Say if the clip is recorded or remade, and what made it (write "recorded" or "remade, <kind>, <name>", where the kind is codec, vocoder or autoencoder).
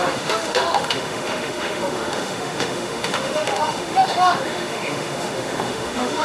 remade, autoencoder, DAC-VAE